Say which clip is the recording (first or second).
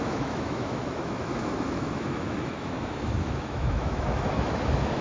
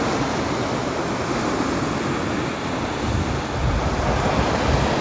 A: second